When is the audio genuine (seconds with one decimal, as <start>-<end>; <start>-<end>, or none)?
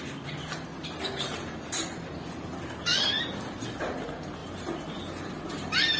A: 0.0-6.0